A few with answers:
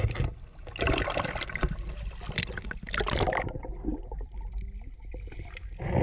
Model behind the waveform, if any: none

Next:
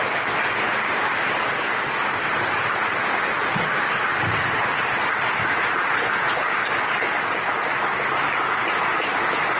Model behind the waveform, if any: none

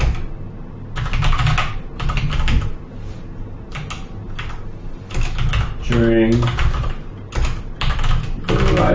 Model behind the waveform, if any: none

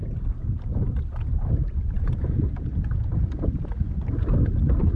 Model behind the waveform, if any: none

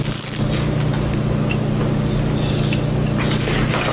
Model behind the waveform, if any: none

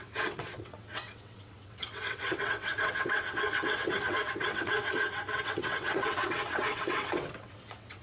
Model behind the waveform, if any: vocoder, WaveNeXt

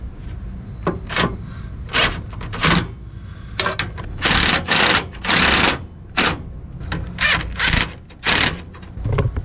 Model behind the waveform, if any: none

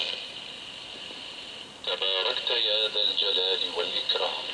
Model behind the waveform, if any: none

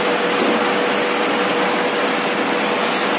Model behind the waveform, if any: none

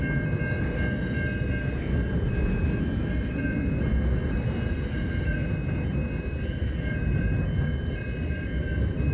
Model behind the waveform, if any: none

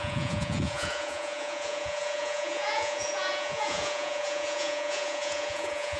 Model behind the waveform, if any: vocoder, Vocos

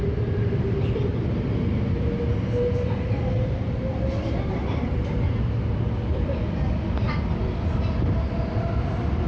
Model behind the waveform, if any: none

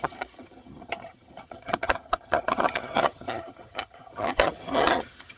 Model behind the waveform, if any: vocoder, HiFi-GAN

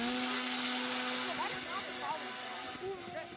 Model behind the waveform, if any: none